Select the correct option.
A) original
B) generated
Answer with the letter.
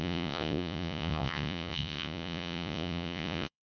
B